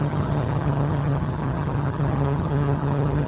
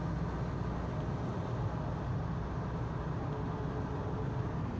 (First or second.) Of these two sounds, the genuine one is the second